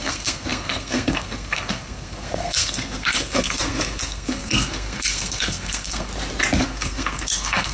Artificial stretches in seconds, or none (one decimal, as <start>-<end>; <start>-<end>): 0.0-6.1; 6.6-7.7